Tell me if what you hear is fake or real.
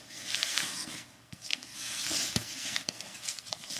fake